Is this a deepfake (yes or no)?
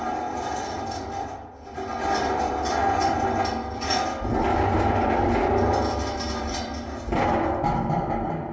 yes